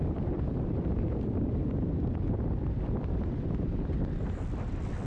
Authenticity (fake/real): fake